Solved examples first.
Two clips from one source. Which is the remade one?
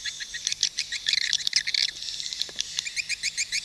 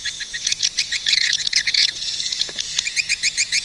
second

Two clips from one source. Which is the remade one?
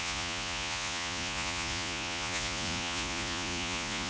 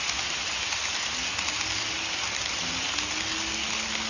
first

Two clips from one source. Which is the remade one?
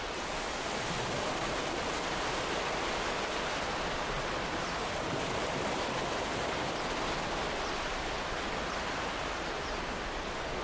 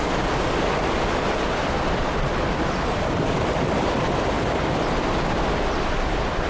second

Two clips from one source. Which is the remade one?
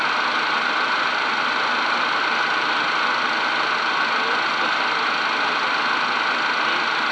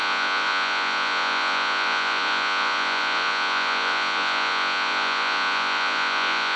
second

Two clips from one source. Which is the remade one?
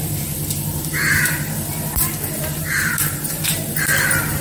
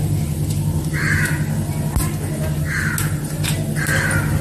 first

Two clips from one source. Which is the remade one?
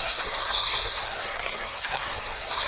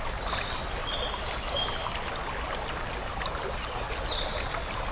first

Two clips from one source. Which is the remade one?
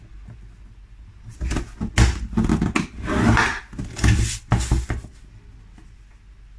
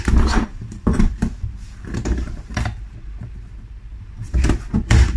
second